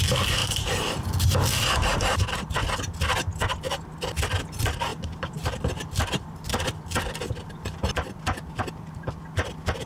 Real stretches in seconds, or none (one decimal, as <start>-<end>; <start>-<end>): 0.0-0.4; 1.0-4.9; 5.5-9.9